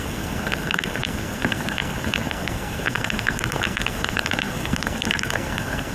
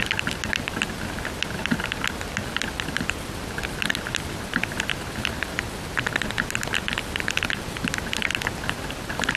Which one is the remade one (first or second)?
first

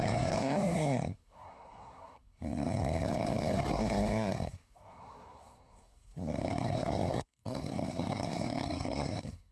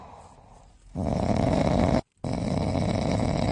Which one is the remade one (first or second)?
first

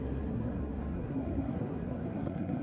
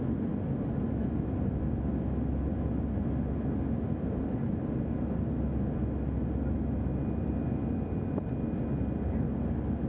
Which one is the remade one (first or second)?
first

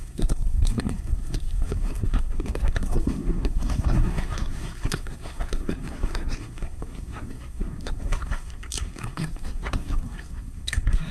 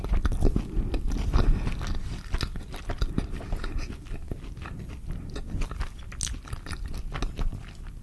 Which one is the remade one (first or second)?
first